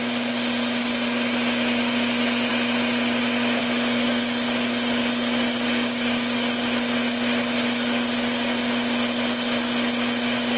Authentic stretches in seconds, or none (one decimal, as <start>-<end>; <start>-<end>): 0.0-10.6